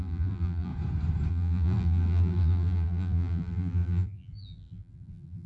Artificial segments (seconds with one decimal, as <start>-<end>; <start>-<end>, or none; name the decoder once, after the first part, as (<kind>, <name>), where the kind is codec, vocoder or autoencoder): 0.0-0.7 (vocoder, BigVGAN v2); 1.3-5.5